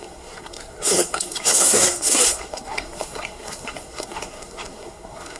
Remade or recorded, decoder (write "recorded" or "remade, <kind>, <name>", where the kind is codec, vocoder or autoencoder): remade, codec, SNAC